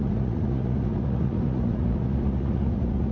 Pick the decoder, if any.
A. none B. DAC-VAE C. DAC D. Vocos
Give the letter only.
D